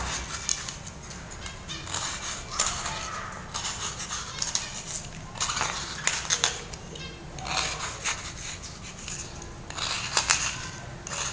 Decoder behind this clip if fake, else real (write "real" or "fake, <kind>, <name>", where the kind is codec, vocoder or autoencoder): real